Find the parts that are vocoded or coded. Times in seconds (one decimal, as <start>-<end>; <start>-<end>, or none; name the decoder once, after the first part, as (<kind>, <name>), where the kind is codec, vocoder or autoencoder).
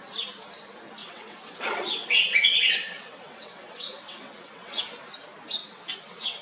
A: 1.0-4.8 (vocoder, WaveNeXt); 5.6-6.4